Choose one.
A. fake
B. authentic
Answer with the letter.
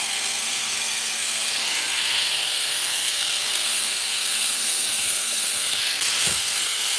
A